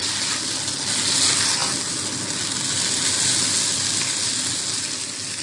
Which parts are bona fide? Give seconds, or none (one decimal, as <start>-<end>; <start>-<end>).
0.0-5.4